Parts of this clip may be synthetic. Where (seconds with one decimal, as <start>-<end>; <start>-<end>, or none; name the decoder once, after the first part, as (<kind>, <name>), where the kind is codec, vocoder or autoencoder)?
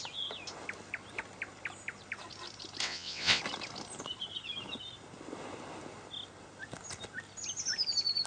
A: 2.8-3.4 (vocoder, WaveNeXt)